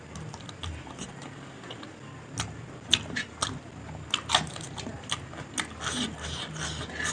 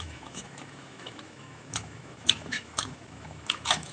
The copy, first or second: second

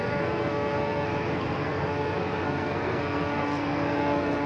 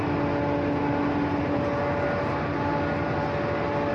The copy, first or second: first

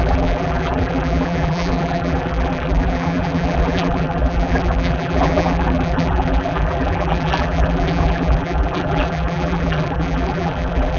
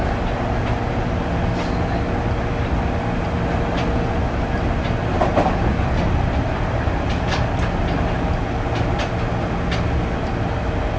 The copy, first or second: first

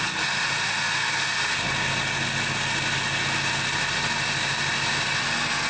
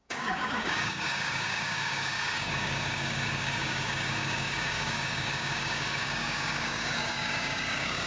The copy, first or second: second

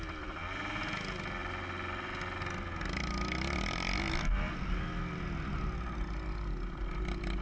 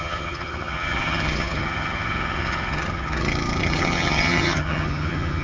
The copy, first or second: second